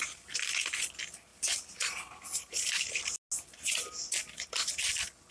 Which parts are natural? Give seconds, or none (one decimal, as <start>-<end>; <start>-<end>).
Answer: 0.0-5.3